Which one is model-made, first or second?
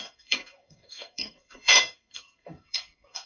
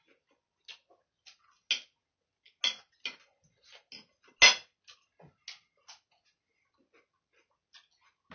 first